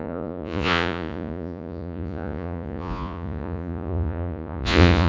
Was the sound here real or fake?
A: fake